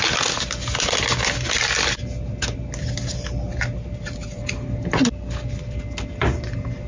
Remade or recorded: recorded